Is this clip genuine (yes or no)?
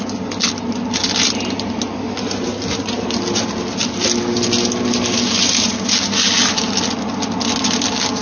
yes